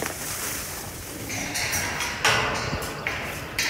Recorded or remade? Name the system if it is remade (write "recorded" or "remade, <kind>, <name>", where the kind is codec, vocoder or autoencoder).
recorded